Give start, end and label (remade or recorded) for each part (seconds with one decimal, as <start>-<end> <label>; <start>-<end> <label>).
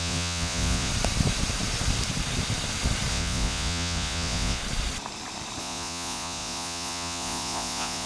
0.0-0.9 remade; 0.9-3.1 recorded; 3.1-4.6 remade; 4.6-5.6 recorded; 5.6-8.1 remade